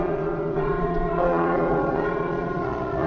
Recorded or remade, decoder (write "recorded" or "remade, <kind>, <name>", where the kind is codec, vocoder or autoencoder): remade, vocoder, Vocos